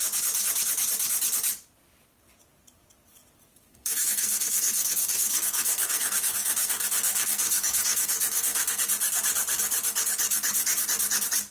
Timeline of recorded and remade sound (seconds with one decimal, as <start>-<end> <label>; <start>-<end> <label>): 0.0-3.7 recorded; 3.7-8.8 remade; 8.8-11.5 recorded

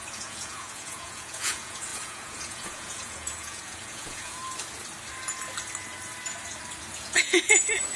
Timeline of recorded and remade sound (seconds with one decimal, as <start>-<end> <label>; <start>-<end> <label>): 0.0-4.4 remade; 4.4-6.9 recorded; 6.9-8.0 remade

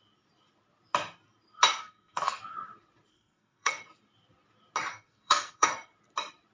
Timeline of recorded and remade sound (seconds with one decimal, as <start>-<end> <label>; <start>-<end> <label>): 0.0-1.8 recorded; 1.8-2.4 remade; 2.4-3.1 recorded; 3.1-3.8 remade; 3.8-4.9 recorded; 4.9-5.7 remade; 5.7-6.5 recorded

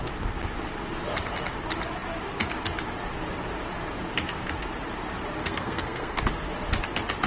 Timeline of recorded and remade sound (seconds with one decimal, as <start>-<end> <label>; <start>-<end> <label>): 0.0-5.4 recorded; 5.4-6.2 remade; 6.2-7.3 recorded